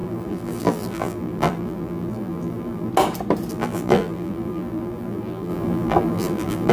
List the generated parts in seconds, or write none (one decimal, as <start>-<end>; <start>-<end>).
0.0-2.9; 3.5-6.7